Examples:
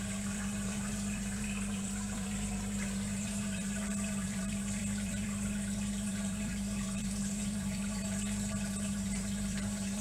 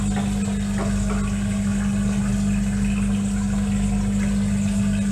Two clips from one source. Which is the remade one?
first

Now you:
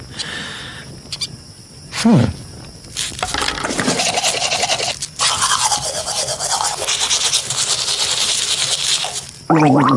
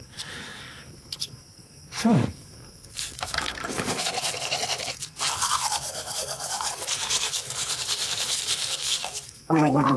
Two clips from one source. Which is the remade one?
second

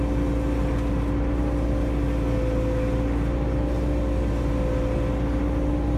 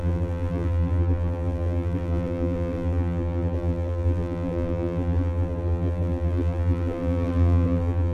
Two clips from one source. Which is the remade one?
second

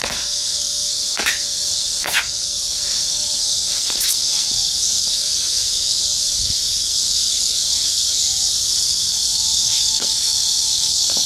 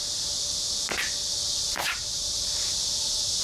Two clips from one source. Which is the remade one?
first